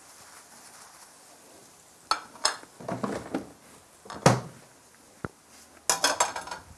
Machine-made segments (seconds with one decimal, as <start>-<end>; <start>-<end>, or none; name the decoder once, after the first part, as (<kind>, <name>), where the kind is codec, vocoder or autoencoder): none